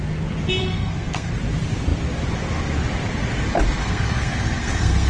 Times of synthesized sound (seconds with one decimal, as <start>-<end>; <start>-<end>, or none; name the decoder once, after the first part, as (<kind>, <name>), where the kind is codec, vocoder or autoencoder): 0.6-1.3 (codec, SNAC); 3.8-5.1